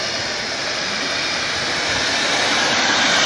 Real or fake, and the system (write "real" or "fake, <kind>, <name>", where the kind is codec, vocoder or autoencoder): fake, vocoder, BigVGAN v2